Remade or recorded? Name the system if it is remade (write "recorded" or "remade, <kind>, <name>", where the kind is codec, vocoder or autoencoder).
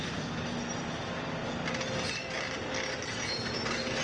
recorded